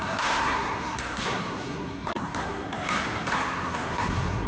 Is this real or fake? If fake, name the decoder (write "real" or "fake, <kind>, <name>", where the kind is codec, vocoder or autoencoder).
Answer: fake, codec, SNAC